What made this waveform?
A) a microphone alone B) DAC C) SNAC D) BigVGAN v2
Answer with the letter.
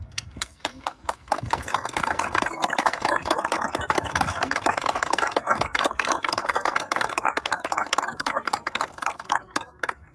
C